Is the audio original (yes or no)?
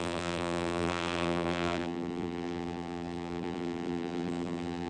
no